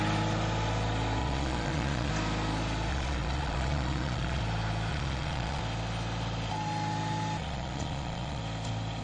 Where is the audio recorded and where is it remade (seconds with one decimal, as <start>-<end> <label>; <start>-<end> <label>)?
0.0-1.2 recorded; 1.2-2.1 remade; 2.1-2.9 recorded; 2.9-4.4 remade; 4.4-4.9 recorded; 4.9-5.6 remade; 5.6-7.4 recorded; 7.4-8.4 remade; 8.4-9.0 recorded